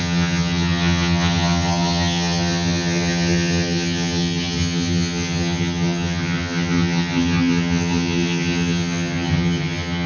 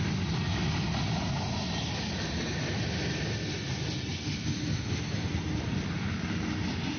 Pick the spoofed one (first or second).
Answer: first